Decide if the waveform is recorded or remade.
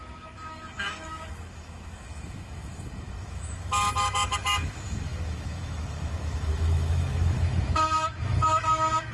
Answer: remade